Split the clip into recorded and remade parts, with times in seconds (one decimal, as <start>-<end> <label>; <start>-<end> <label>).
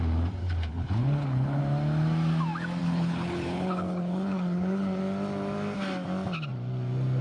0.0-0.4 recorded; 0.4-1.6 remade; 1.6-2.8 recorded; 2.8-5.0 remade; 5.0-7.2 recorded